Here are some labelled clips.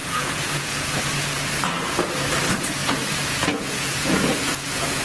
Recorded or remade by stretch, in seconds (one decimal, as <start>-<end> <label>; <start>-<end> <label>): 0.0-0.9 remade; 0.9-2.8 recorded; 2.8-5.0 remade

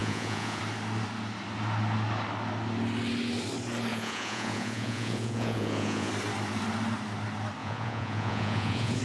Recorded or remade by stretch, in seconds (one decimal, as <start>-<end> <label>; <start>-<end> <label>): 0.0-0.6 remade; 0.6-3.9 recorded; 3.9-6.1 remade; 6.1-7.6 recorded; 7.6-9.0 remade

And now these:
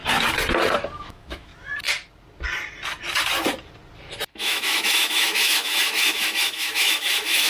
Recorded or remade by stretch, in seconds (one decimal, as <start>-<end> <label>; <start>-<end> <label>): 0.0-1.0 recorded; 1.0-1.5 remade; 1.5-4.3 recorded; 4.3-7.5 remade